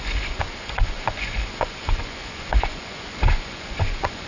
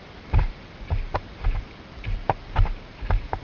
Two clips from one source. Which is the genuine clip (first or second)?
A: second